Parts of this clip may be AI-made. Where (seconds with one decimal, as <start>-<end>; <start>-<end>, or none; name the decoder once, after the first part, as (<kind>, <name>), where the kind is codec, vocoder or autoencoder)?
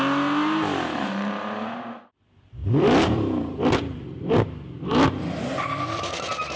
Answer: 2.6-4.3 (vocoder, BigVGAN v2)